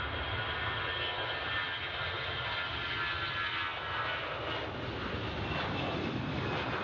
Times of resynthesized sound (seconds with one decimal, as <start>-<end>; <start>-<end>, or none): none

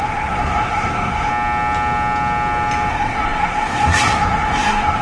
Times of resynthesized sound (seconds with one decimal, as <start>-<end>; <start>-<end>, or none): 0.0-1.3; 2.9-5.0

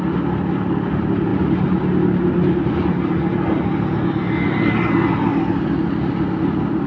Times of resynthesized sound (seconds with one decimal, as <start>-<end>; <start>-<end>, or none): none